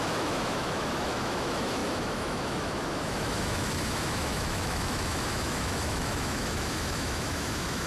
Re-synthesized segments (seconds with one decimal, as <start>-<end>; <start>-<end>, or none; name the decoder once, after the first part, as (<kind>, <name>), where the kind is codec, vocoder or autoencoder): 0.0-7.9 (autoencoder, DAC-VAE)